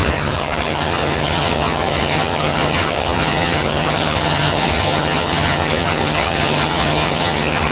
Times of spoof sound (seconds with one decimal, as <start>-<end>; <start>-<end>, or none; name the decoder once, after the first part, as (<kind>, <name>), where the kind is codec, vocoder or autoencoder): 0.0-7.7 (vocoder, HiFi-GAN)